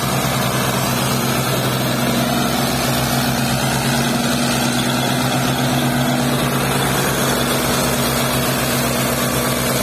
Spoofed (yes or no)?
no